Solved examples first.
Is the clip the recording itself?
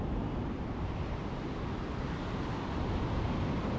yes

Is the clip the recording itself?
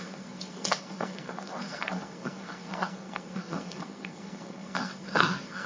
no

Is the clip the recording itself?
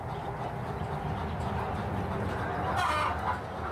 yes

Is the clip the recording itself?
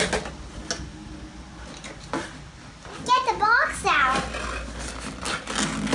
yes